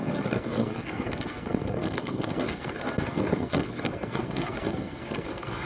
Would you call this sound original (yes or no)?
no